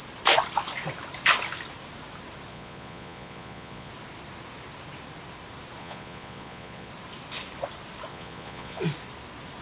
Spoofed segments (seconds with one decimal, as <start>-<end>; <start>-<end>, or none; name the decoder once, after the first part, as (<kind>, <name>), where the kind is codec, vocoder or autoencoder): 2.5-3.9 (vocoder, Vocos); 5.8-6.9; 8.1-8.8